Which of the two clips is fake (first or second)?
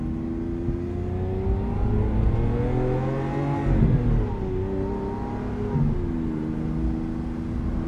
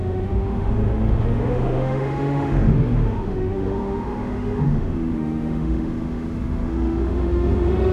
second